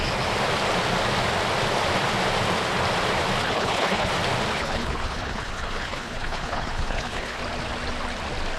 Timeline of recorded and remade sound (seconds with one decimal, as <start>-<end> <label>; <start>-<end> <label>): 0.0-3.4 recorded; 3.4-4.1 remade; 4.1-4.5 recorded; 4.5-7.4 remade; 7.4-8.6 recorded